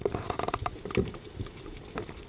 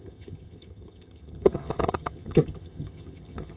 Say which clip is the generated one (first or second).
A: second